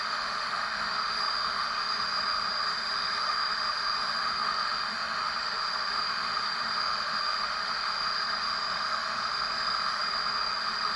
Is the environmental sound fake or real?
fake